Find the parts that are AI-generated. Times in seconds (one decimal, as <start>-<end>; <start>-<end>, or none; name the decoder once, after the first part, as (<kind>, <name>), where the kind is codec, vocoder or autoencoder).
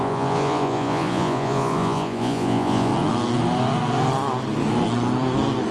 0.0-2.9 (vocoder, Vocos)